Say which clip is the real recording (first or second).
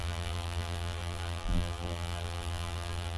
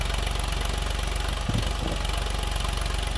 second